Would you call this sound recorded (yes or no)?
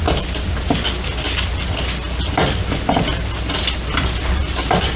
yes